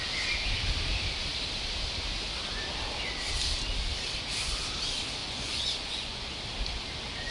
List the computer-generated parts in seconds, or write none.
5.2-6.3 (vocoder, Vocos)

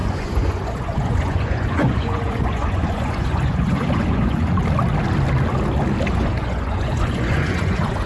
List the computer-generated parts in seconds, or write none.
0.0-4.6 (vocoder, Vocos); 6.1-8.1